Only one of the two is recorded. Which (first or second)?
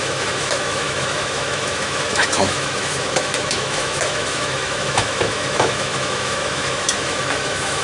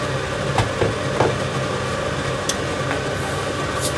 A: second